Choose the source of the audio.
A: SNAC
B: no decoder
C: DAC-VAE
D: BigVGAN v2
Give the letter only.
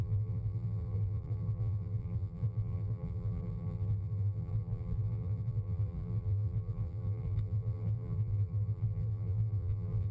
D